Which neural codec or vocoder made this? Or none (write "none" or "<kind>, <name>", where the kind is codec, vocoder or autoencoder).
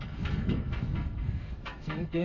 codec, SNAC